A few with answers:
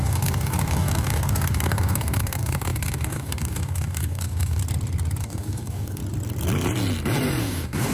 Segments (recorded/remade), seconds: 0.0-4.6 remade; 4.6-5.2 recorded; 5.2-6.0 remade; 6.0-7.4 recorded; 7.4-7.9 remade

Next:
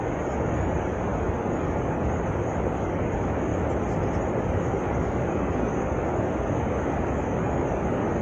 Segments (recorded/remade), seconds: 0.0-3.5 remade; 3.5-4.4 recorded; 4.4-8.2 remade

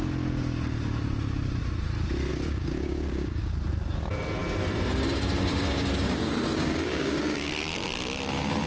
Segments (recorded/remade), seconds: 0.0-2.3 recorded; 2.3-3.5 remade; 3.5-5.5 recorded; 5.5-7.5 remade; 7.5-8.7 recorded